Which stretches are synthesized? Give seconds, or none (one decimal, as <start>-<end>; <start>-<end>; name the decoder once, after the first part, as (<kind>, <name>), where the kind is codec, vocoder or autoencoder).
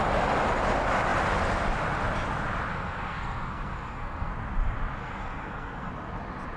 2.7-4.3 (codec, SNAC); 5.0-5.9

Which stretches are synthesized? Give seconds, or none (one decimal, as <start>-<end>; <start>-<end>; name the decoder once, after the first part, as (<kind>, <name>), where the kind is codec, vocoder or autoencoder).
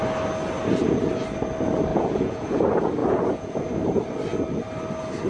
1.9-2.6 (vocoder, Vocos); 3.0-3.6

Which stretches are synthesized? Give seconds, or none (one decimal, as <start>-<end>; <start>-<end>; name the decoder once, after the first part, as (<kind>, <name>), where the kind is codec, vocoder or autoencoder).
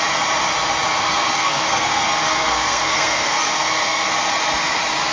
1.0-4.1 (codec, SNAC)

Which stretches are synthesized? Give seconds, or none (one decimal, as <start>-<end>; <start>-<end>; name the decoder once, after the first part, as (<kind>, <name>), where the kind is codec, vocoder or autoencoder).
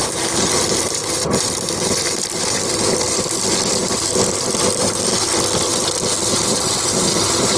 6.4-7.6 (vocoder, BigVGAN v2)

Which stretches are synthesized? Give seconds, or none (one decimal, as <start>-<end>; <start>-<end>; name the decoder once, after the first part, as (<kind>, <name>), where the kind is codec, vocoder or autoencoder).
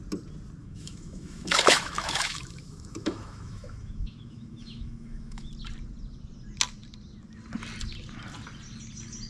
0.6-5.5 (autoencoder, DAC-VAE)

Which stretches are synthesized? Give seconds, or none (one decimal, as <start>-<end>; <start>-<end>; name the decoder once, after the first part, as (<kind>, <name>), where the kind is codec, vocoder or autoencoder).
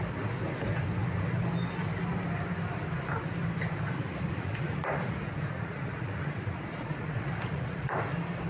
4.0-7.9 (vocoder, Vocos)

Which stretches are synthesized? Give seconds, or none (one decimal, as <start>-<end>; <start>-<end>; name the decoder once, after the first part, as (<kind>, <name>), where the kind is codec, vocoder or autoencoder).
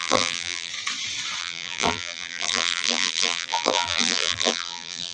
0.0-0.7 (vocoder, BigVGAN v2); 1.4-5.1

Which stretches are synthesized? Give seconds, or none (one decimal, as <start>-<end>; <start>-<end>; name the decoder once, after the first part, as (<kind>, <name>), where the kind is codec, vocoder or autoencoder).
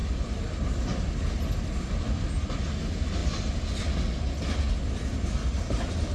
none